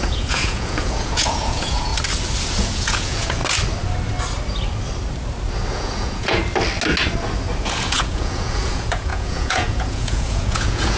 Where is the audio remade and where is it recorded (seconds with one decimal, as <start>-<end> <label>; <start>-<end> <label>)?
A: 0.0-1.9 remade; 1.9-2.6 recorded; 2.6-3.4 remade; 3.4-5.7 recorded; 5.7-6.4 remade; 6.4-7.6 recorded; 7.6-11.0 remade